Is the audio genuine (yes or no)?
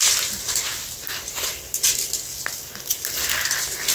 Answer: yes